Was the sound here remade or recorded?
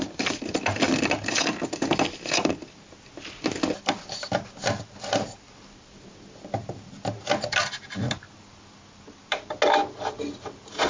recorded